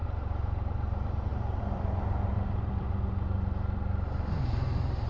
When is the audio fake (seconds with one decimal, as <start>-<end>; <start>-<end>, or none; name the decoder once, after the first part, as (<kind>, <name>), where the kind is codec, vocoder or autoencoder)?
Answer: 0.0-0.6 (vocoder, BigVGAN v2); 1.3-4.4